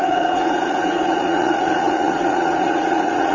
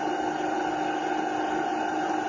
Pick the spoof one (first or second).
first